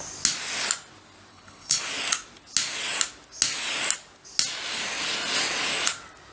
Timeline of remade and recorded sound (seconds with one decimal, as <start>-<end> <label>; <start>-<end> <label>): 0.0-1.3 recorded; 1.3-1.8 remade; 1.8-6.3 recorded